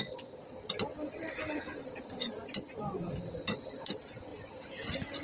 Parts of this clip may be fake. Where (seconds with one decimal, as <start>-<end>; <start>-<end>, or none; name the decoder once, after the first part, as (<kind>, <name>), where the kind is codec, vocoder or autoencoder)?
none